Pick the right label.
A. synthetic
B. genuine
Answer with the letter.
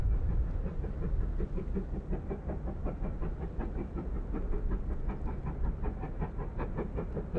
B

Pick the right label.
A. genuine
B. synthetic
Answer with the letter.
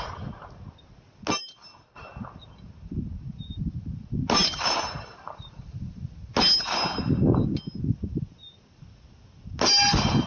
A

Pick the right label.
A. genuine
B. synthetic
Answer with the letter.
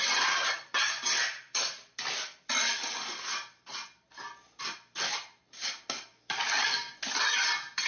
A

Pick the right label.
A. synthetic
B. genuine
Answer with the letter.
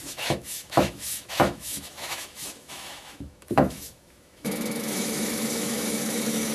A